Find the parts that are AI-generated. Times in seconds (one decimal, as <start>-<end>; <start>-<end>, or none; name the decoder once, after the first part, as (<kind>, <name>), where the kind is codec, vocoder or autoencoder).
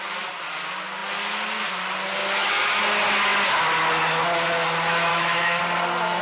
2.2-2.8 (autoencoder, DAC-VAE); 5.1-5.6